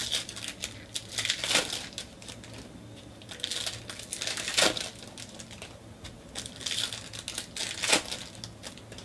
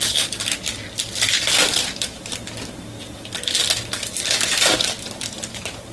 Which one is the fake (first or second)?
second